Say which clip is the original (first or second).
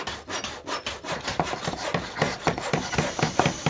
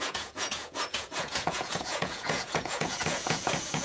first